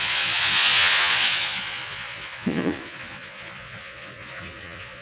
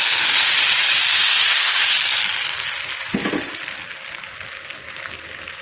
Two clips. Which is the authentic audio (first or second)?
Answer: second